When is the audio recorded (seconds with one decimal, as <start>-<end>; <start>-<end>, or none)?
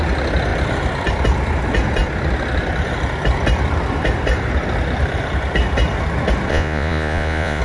0.0-6.5